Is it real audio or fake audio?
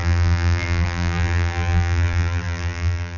fake